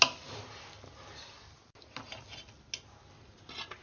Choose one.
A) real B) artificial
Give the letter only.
A